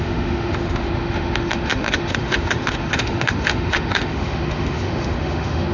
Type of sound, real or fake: fake